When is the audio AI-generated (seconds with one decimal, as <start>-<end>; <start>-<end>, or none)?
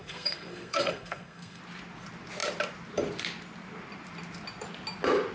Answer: 0.0-1.6